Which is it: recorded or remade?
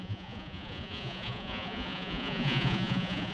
remade